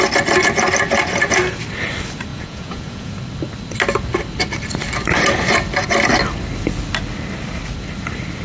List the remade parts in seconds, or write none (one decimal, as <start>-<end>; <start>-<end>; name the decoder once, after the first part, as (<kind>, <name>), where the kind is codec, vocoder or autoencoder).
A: 2.3-3.2 (vocoder, Vocos)